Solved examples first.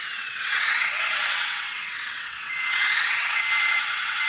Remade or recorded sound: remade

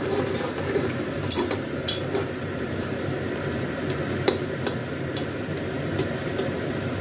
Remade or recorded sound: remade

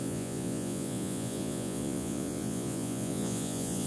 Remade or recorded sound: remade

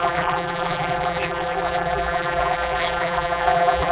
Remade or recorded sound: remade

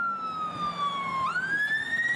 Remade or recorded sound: recorded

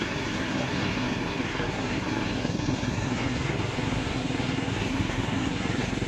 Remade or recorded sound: remade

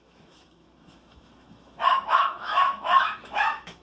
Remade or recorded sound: remade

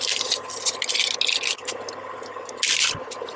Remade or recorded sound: recorded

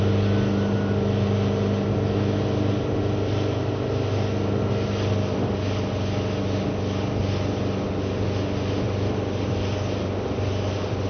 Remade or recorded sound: recorded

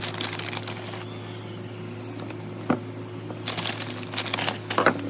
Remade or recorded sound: recorded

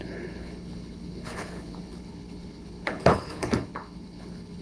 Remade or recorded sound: remade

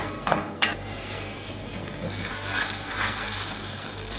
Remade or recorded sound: remade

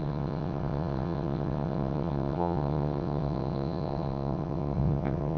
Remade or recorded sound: remade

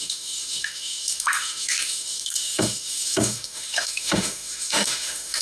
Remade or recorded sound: remade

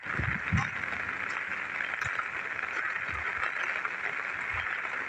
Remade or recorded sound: recorded